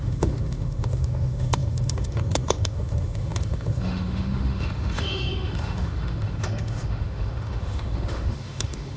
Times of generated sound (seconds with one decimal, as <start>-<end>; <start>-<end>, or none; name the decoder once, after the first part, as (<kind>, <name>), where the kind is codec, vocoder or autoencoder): 0.0-9.0 (autoencoder, DAC-VAE)